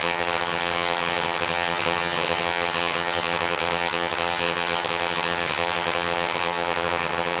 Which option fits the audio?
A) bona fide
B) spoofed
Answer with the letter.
B